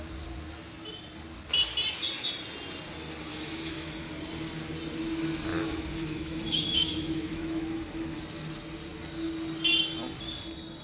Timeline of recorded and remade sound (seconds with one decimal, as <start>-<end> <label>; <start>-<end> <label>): 0.0-3.3 recorded; 3.3-4.1 remade; 4.1-5.5 recorded; 5.5-8.2 remade; 8.2-10.8 recorded

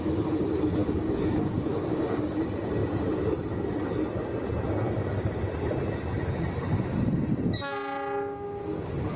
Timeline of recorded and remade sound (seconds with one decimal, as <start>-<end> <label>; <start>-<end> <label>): 0.0-0.8 recorded; 0.8-2.4 remade; 2.4-9.2 recorded

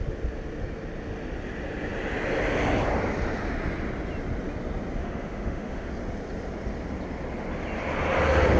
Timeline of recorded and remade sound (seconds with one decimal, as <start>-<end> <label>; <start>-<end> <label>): 0.0-5.0 recorded; 5.0-5.9 remade; 5.9-8.6 recorded

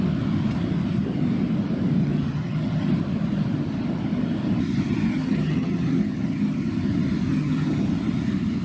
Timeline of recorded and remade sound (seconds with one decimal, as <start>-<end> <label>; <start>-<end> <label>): 0.0-2.0 recorded; 2.0-2.9 remade; 2.9-5.1 recorded; 5.1-6.7 remade; 6.7-7.3 recorded; 7.3-7.8 remade; 7.8-8.6 recorded

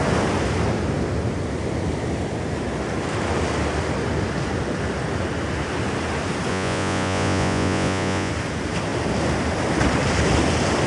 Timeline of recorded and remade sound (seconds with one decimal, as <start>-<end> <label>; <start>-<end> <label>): 0.0-6.5 recorded; 6.5-8.3 remade; 8.3-10.9 recorded

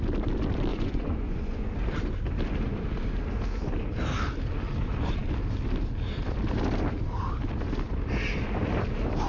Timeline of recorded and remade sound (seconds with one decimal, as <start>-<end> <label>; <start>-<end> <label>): 0.0-0.7 recorded; 0.7-1.7 remade; 1.7-9.3 recorded

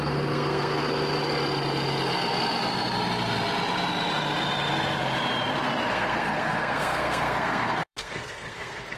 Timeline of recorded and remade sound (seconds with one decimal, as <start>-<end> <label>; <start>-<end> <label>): 0.0-0.7 remade; 0.7-5.9 recorded; 5.9-9.0 remade

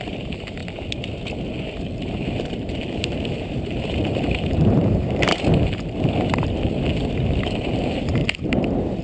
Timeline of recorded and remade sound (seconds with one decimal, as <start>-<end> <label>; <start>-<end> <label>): 0.0-0.6 remade; 0.6-2.4 recorded; 2.4-5.3 remade; 5.3-7.4 recorded; 7.4-9.0 remade